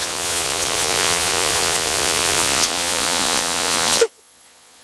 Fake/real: fake